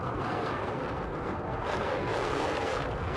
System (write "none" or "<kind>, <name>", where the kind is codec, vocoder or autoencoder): codec, SNAC